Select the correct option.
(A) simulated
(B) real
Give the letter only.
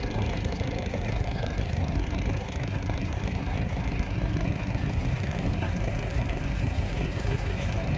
A